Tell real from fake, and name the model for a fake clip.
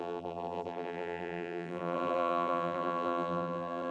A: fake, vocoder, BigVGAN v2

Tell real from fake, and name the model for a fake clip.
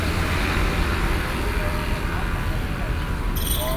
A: real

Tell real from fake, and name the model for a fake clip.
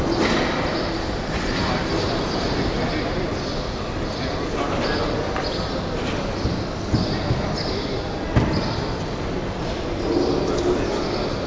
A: real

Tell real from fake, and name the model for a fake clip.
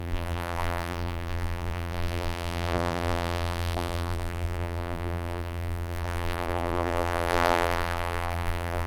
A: fake, vocoder, BigVGAN v2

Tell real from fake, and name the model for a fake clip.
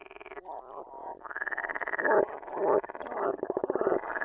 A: real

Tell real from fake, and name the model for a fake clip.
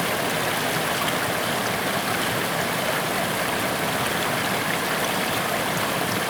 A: real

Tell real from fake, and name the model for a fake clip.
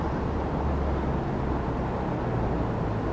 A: real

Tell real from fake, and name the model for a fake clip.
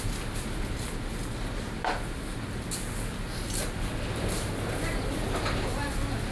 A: real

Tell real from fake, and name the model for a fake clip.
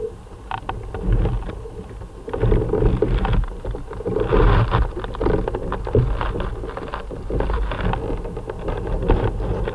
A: real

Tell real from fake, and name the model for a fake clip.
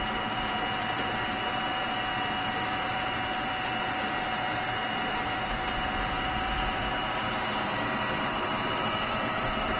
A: fake, vocoder, BigVGAN v2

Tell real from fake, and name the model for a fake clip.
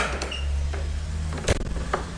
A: real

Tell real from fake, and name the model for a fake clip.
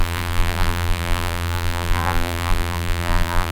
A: fake, vocoder, BigVGAN v2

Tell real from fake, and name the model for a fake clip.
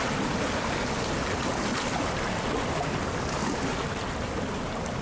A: real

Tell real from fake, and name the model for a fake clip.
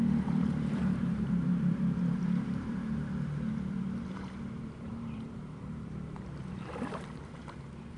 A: fake, vocoder, BigVGAN v2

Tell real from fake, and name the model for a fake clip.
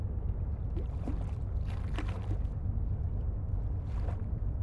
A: fake, vocoder, BigVGAN v2